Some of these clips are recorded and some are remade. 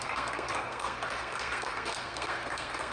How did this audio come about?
remade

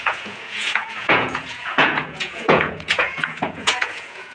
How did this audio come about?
remade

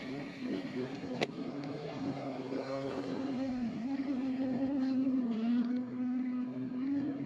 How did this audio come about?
remade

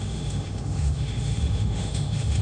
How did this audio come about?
remade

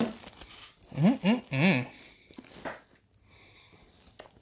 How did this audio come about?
recorded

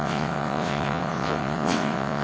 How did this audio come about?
remade